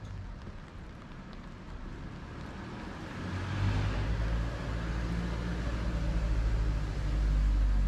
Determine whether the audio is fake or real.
real